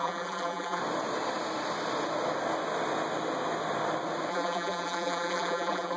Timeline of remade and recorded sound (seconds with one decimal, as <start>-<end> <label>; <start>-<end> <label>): 0.0-0.8 remade; 0.8-4.3 recorded; 4.3-6.0 remade